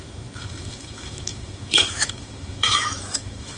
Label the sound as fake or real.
fake